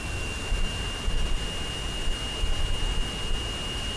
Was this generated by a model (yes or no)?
no